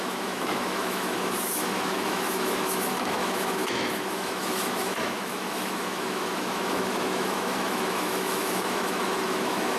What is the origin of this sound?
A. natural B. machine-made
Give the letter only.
B